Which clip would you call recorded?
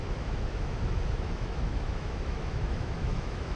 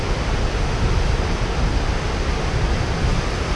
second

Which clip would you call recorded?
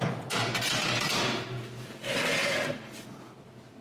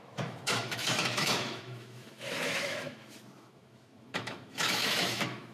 first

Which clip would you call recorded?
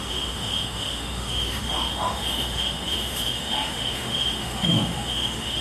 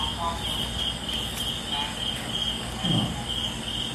second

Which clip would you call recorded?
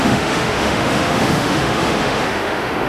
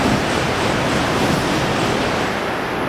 second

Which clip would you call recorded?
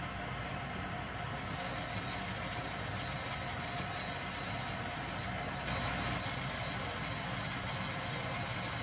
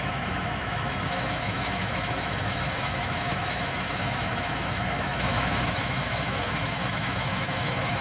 first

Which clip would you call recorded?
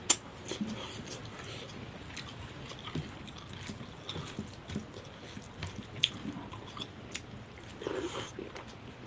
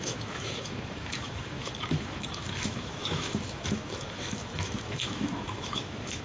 first